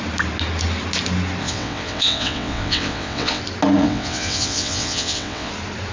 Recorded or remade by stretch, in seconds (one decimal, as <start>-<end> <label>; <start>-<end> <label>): 0.0-1.4 recorded; 1.4-3.4 remade; 3.4-3.8 recorded; 3.8-5.5 remade; 5.5-5.9 recorded